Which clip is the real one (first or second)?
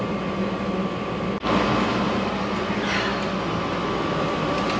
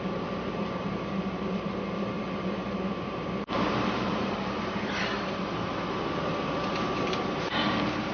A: first